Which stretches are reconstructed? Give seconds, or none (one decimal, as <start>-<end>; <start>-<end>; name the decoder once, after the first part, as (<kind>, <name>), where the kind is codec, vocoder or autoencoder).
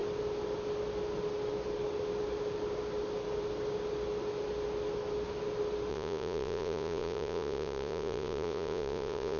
5.9-9.4 (vocoder, Vocos)